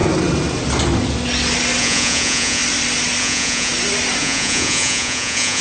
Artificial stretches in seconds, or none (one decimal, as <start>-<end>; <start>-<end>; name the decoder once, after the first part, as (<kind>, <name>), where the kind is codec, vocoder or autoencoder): 1.8-2.6 (vocoder, Vocos); 3.2-3.7; 4.2-5.6